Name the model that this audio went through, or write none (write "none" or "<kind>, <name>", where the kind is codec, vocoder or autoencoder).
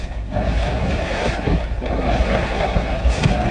codec, SNAC